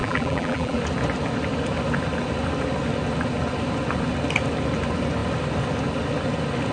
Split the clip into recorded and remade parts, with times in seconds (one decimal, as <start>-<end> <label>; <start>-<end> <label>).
0.0-0.8 remade; 0.8-6.7 recorded